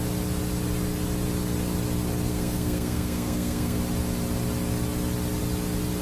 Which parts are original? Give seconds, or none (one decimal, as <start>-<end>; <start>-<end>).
0.0-2.3; 3.8-6.0